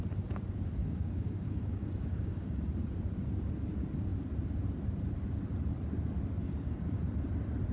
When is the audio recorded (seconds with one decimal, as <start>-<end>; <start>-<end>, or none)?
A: 0.0-0.8; 2.7-6.4; 7.0-7.7